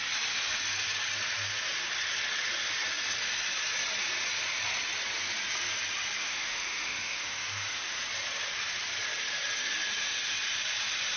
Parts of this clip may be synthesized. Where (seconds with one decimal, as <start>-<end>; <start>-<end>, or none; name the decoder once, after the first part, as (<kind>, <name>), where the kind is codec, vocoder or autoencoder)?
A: 6.2-8.0 (autoencoder, DAC-VAE)